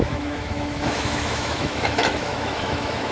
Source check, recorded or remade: remade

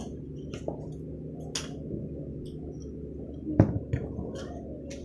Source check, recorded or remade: recorded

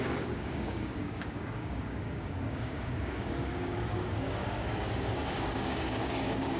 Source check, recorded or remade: remade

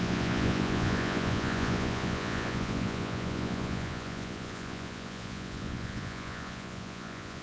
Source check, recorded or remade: remade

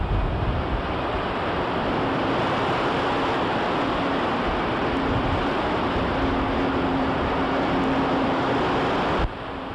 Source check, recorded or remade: remade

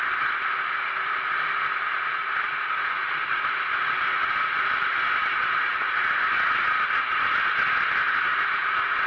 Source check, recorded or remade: recorded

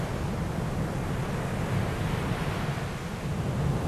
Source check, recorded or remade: recorded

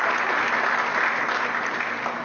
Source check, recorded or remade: recorded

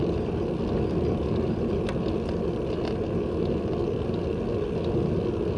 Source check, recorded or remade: recorded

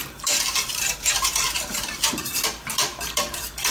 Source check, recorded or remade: remade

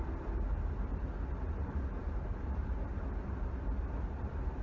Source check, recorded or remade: recorded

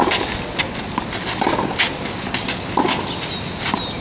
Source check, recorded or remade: recorded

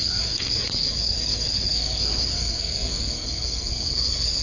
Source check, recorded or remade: remade